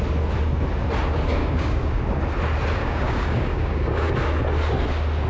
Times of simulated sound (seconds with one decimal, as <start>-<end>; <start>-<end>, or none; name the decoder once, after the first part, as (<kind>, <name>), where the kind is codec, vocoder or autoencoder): 1.4-2.0 (codec, DAC); 2.8-4.1